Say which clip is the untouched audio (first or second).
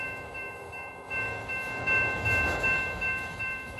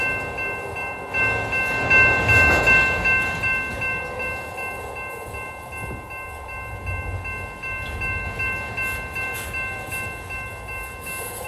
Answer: second